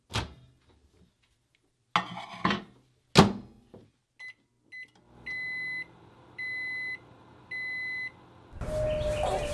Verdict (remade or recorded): recorded